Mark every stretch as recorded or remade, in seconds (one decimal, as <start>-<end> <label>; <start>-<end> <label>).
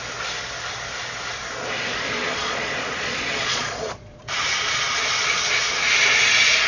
0.0-2.2 recorded; 2.2-5.5 remade; 5.5-6.7 recorded